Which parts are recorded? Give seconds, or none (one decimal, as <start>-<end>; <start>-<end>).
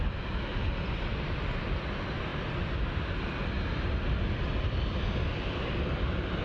0.0-6.4